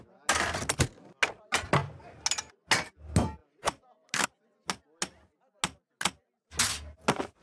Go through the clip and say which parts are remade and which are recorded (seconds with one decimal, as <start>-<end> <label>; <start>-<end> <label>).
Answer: 0.0-7.4 recorded